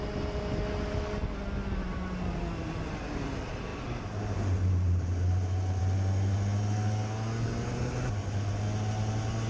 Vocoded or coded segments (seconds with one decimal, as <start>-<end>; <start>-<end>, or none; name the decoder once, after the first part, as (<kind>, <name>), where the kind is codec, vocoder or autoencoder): none